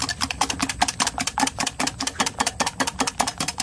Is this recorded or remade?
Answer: recorded